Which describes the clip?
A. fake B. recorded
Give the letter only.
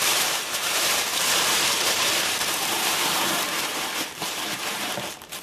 A